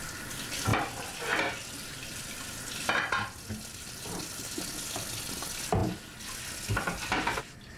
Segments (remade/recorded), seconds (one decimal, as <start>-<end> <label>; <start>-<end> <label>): 0.0-7.8 recorded